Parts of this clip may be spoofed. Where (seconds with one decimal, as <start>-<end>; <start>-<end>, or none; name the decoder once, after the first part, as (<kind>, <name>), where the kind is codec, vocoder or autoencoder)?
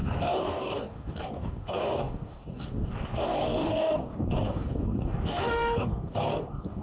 0.0-6.8 (codec, DAC)